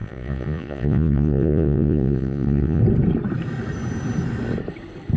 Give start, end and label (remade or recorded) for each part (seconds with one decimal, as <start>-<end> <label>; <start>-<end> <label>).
0.0-2.8 remade; 2.8-5.2 recorded